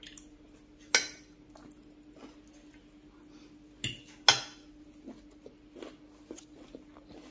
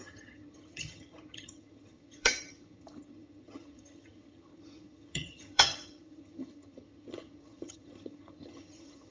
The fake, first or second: second